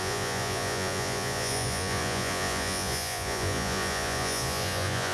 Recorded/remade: remade